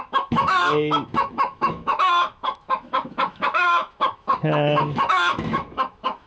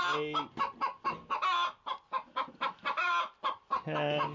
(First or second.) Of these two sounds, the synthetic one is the first